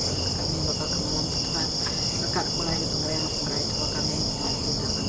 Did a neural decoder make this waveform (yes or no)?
no